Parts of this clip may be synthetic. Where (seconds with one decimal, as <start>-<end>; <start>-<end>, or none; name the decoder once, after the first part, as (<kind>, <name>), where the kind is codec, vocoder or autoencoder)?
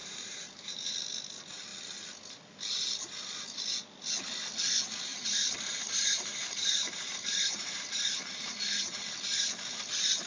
0.0-0.9 (vocoder, BigVGAN v2); 5.1-9.1